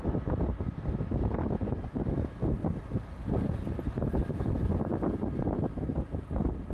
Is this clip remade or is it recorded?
recorded